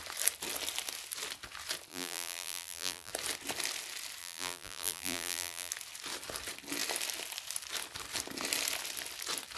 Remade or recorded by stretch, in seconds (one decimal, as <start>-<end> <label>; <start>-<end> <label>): 0.0-1.9 recorded; 1.9-3.1 remade; 3.1-4.2 recorded; 4.2-5.7 remade; 5.7-9.6 recorded